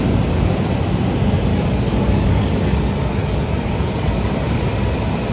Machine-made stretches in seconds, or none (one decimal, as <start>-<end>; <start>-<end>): 1.5-4.7